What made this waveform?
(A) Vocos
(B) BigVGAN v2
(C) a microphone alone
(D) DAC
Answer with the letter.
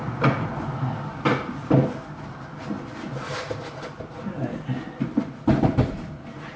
C